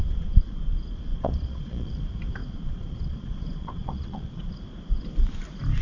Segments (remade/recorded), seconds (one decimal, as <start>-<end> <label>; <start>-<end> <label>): 0.0-0.7 remade; 0.7-1.1 recorded; 1.1-2.0 remade; 2.0-2.4 recorded; 2.4-4.5 remade; 4.5-5.8 recorded